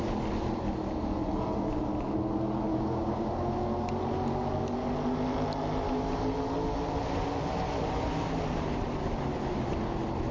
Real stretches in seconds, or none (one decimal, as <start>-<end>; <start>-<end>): 0.0-2.7; 3.3-10.3